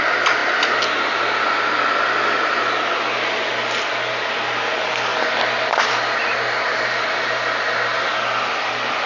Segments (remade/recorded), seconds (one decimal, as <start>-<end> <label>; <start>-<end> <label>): 0.0-5.1 recorded; 5.1-9.1 remade